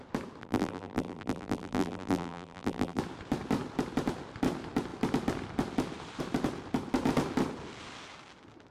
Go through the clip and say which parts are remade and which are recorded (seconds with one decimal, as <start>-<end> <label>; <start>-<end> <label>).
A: 0.0-0.4 recorded; 0.4-3.0 remade; 3.0-8.7 recorded